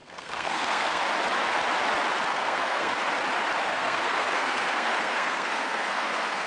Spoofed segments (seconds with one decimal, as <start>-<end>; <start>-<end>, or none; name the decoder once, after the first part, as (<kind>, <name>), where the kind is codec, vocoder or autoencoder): 0.0-1.0 (codec, SNAC); 2.3-2.9; 3.7-6.5